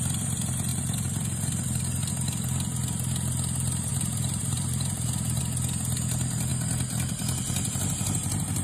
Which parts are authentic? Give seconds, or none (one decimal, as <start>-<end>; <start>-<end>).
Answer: 0.0-0.7; 2.1-3.9; 5.4-8.6